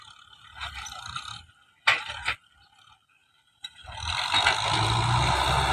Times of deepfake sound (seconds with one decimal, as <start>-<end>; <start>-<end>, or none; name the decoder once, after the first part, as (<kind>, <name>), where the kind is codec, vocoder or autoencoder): 3.2-5.3 (vocoder, BigVGAN v2)

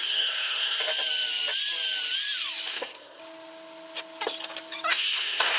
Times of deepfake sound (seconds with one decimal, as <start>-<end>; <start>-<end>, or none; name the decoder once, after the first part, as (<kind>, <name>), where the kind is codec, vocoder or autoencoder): 0.0-0.8 (codec, SNAC); 2.7-3.2; 4.9-5.6

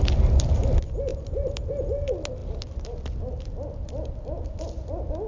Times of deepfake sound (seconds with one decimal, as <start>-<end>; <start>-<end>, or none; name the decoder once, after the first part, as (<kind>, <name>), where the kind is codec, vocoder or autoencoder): 1.1-1.7 (vocoder, BigVGAN v2); 2.4-4.6